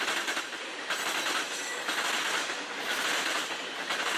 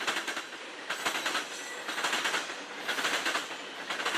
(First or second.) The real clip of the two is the second